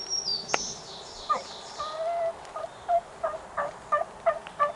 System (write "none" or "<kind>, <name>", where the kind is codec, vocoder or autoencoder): none